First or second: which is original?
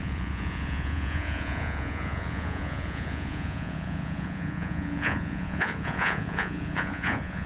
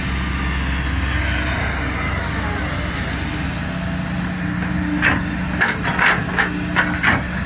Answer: second